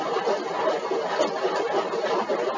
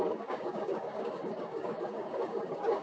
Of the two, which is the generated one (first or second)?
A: second